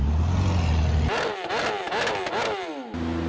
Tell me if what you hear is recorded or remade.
recorded